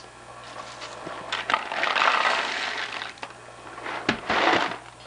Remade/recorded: recorded